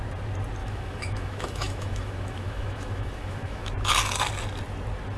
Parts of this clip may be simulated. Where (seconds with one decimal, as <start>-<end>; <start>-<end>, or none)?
0.6-3.7

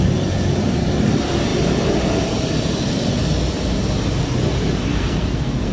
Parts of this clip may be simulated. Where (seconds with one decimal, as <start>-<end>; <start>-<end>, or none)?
4.9-5.7

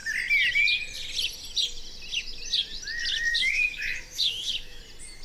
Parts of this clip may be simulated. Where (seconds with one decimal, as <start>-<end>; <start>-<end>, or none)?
3.3-4.8

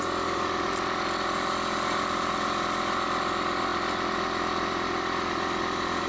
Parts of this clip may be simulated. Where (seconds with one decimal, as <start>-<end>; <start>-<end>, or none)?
none

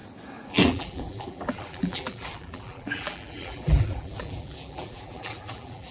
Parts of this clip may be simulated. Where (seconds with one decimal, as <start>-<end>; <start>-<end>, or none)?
0.5-5.9

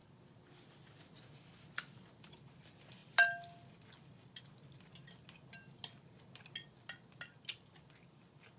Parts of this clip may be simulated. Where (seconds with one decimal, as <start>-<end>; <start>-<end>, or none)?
none

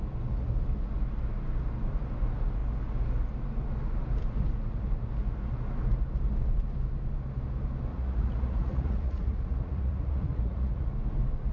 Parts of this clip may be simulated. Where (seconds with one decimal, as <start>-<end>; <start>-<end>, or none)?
7.9-10.9

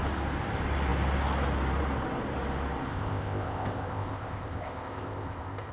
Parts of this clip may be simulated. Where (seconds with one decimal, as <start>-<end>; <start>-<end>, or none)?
2.9-5.7